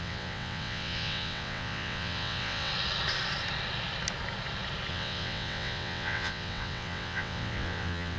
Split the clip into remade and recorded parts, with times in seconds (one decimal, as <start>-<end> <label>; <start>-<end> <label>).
0.0-2.7 remade; 2.7-4.9 recorded; 4.9-8.2 remade